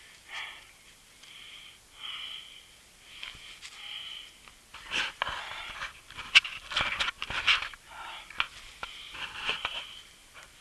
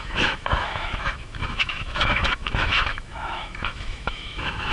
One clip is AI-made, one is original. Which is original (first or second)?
first